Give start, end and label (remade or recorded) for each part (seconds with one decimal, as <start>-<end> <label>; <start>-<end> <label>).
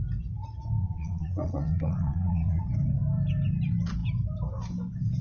0.0-0.8 recorded; 0.8-2.6 remade; 2.6-5.2 recorded